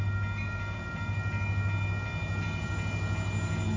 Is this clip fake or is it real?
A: real